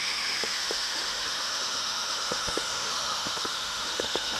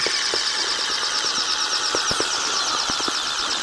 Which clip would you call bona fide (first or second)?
second